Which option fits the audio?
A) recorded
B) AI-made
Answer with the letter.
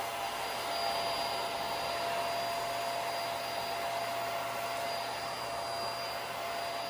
A